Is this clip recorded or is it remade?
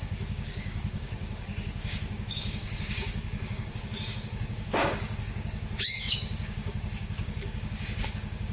remade